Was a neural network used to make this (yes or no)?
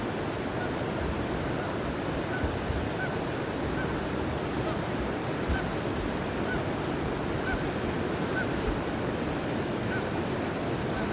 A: no